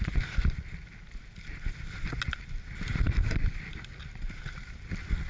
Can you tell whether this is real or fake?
real